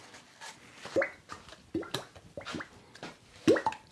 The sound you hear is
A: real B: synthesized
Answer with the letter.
A